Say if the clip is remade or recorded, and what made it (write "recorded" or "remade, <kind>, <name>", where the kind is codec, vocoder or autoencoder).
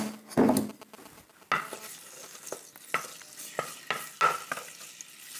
recorded